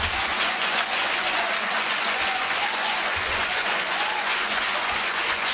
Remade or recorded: remade